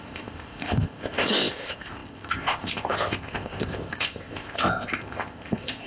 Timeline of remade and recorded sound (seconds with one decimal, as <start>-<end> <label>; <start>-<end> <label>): 0.0-5.9 remade